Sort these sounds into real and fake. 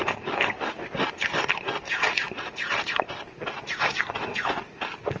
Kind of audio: real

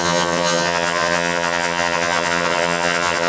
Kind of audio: fake